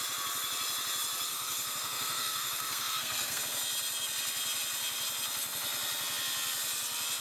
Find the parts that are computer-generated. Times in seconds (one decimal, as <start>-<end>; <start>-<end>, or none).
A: 1.3-3.4